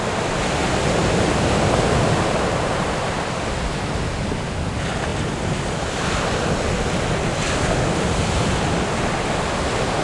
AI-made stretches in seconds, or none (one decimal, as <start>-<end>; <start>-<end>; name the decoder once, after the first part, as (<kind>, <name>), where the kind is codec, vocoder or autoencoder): none